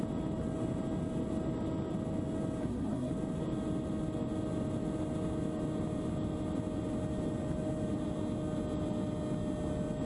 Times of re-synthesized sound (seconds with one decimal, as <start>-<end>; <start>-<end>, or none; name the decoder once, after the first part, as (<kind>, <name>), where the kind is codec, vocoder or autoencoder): 2.6-3.1 (codec, SNAC)